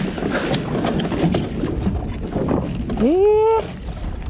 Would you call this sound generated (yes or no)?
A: no